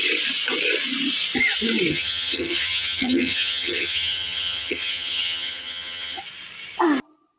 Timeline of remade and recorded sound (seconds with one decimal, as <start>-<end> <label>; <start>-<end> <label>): 0.0-1.9 recorded; 1.9-6.2 remade; 6.2-7.4 recorded